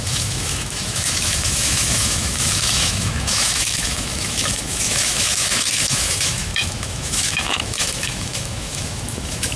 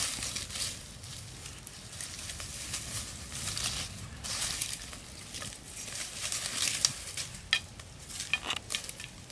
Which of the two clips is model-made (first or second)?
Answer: first